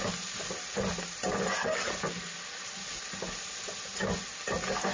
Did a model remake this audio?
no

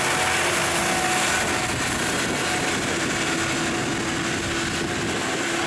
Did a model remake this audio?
no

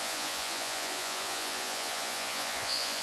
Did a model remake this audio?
yes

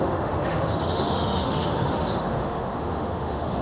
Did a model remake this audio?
yes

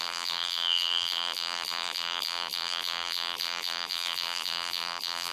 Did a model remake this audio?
yes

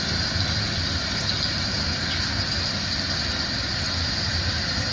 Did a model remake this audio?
no